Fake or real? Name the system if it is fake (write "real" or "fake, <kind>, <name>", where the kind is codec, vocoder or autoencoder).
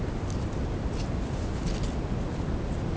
real